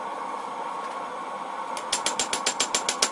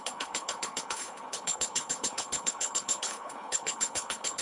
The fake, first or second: second